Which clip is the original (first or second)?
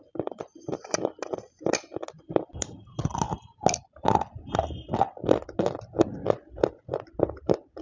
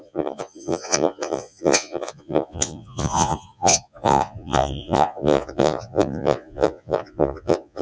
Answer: first